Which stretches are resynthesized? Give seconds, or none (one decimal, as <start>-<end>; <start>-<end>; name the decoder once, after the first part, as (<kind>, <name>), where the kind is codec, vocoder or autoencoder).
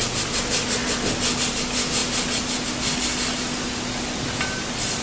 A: none